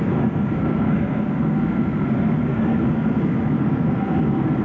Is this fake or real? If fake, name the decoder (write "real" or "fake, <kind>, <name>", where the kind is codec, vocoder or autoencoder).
fake, codec, SNAC